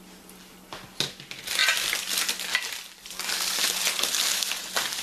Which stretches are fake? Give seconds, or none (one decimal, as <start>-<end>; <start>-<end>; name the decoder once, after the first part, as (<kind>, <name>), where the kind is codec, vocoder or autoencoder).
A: 1.6-4.6 (vocoder, BigVGAN v2)